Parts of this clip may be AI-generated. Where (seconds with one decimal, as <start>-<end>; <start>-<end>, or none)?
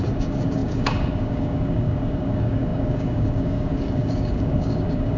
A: 0.0-5.2